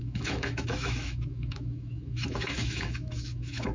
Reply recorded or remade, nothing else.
remade